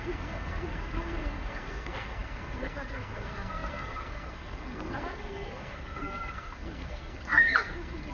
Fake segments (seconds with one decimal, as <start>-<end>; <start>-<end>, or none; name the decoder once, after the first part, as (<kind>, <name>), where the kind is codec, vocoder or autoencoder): 0.0-8.1 (codec, SNAC)